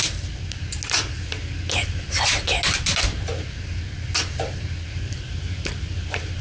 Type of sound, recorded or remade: recorded